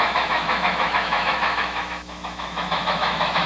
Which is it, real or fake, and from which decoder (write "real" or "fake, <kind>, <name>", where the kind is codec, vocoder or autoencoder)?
fake, autoencoder, DAC-VAE